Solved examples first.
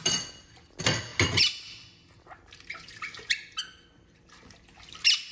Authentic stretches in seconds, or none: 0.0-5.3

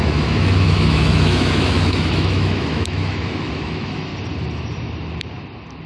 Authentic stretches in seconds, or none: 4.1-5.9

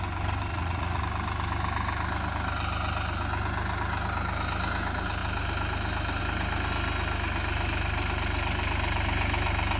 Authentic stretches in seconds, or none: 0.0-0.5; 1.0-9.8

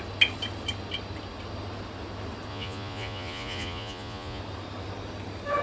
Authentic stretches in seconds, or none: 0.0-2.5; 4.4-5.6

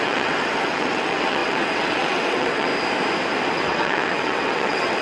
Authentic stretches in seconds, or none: 2.7-3.5

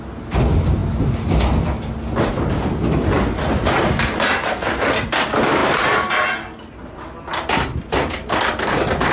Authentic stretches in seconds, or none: 0.0-9.1

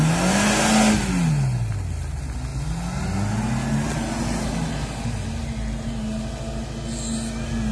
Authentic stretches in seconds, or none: 0.0-7.7

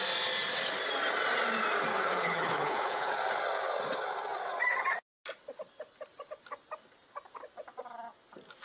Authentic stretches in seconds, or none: 0.0-1.9; 3.1-8.6